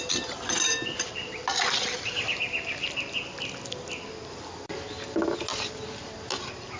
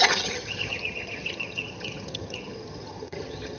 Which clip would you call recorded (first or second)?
first